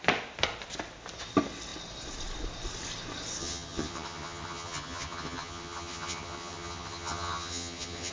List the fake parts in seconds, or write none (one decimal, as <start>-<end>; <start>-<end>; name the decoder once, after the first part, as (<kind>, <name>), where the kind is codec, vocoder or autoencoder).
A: 3.4-8.1 (vocoder, HiFi-GAN)